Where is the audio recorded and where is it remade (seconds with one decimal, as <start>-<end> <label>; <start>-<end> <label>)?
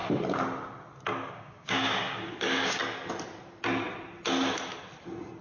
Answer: 0.0-1.3 recorded; 1.3-2.8 remade; 2.8-5.4 recorded